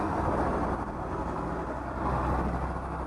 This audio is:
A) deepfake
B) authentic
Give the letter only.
B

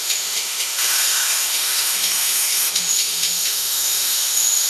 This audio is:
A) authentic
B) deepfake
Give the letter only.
B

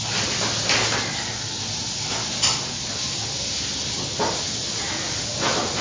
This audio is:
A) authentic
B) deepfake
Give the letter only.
A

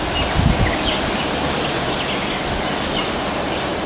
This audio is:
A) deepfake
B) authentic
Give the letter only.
B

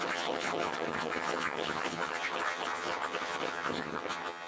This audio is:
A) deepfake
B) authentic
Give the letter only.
A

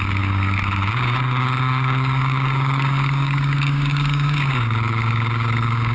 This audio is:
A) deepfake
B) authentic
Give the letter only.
A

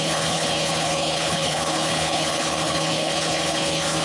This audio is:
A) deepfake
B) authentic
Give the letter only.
A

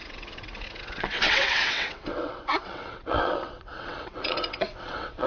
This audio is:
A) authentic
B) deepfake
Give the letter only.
B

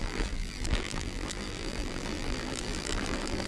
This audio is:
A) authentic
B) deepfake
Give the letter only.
B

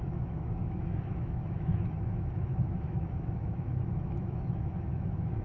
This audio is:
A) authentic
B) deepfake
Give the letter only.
B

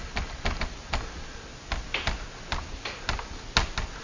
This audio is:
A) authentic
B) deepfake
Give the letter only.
A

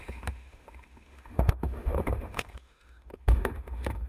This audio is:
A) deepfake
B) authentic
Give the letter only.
A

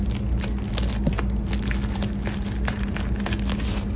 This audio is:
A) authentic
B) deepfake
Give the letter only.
A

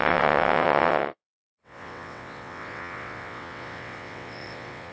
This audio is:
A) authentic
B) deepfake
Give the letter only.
B